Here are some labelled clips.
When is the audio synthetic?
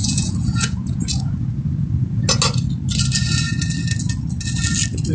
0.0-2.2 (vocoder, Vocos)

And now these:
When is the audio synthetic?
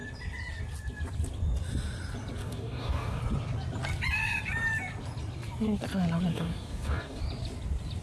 2.4-3.2 (codec, DAC); 6.3-7.2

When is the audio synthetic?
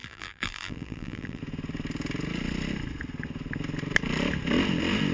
0.0-1.4 (vocoder, BigVGAN v2)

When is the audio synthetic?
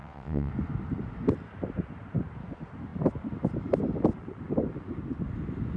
0.0-0.5 (vocoder, WaveNeXt)